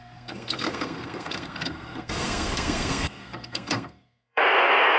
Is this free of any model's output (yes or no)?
no